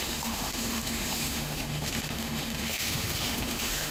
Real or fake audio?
fake